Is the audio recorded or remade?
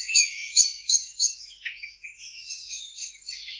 remade